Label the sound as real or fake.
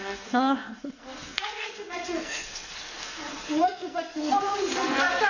fake